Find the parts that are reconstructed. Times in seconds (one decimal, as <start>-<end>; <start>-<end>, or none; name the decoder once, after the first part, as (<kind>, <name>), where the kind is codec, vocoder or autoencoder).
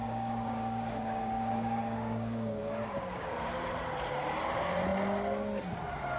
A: 0.0-3.7 (codec, DAC)